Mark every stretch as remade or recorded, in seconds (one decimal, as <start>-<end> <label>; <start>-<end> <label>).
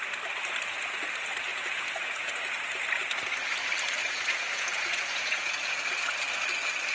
0.0-1.5 recorded; 1.5-2.5 remade; 2.5-4.0 recorded; 4.0-5.8 remade; 5.8-6.9 recorded